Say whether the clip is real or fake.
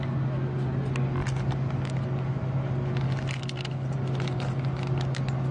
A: real